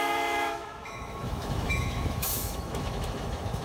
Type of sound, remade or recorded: remade